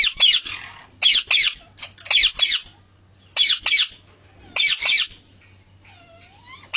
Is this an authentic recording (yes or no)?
yes